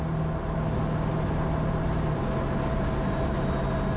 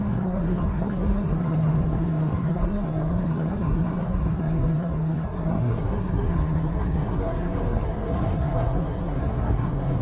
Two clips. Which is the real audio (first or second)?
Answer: first